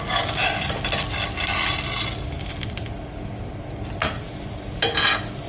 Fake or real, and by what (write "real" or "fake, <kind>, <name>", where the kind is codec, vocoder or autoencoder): real